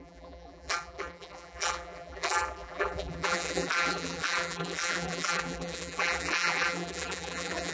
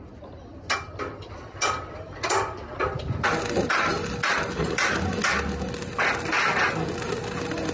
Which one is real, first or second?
second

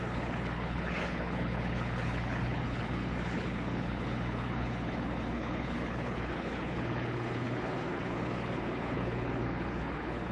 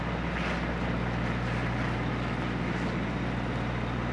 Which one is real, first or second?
second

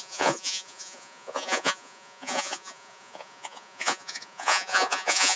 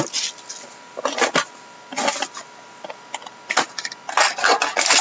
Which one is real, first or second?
second